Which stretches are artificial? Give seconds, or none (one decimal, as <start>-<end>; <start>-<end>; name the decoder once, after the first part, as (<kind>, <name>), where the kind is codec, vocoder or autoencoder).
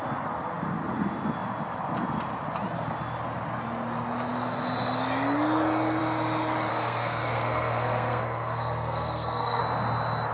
6.7-9.6 (codec, SNAC)